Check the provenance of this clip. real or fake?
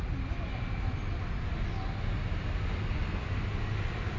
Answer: real